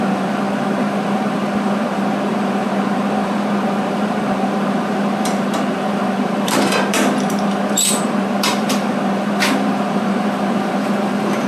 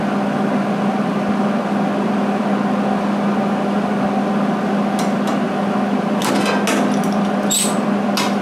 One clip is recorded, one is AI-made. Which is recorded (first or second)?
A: second